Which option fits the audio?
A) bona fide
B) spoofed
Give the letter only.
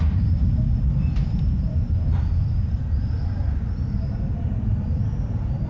B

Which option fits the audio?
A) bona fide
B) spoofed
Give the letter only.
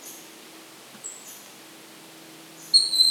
A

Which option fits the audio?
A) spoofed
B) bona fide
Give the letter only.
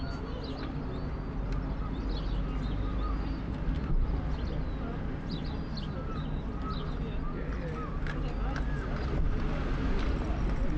B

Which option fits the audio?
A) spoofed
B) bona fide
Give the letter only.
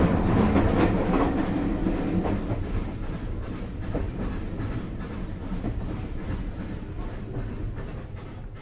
B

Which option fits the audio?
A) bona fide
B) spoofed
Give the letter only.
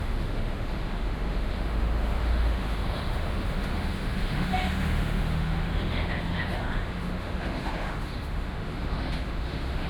B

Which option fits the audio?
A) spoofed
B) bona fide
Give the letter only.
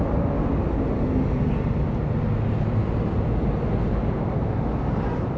B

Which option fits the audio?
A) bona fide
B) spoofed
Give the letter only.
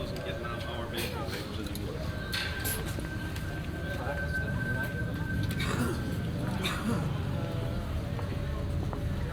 A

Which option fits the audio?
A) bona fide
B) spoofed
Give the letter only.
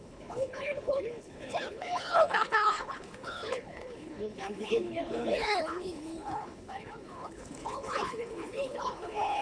B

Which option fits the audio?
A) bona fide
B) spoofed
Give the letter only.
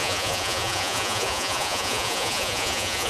B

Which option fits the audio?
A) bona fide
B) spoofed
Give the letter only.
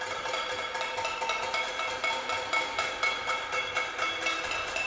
A